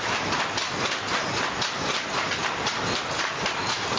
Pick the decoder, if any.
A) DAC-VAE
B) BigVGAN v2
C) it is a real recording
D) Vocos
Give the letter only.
C